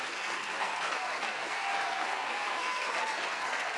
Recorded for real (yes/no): no